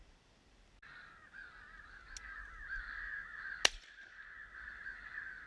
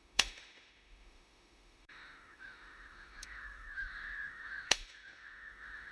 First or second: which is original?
first